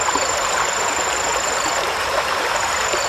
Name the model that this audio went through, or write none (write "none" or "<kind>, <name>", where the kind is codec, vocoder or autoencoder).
vocoder, BigVGAN v2